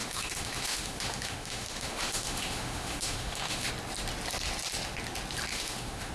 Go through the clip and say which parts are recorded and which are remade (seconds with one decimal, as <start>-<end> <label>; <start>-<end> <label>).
0.0-3.7 remade; 3.7-5.5 recorded; 5.5-6.1 remade

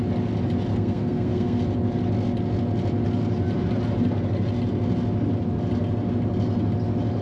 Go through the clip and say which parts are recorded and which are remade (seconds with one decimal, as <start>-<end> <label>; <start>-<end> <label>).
0.0-0.7 recorded; 0.7-1.6 remade; 1.6-7.2 recorded